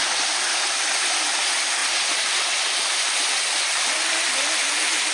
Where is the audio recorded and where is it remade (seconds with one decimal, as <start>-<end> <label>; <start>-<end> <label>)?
0.0-0.7 recorded; 0.7-1.8 remade; 1.8-3.9 recorded; 3.9-5.1 remade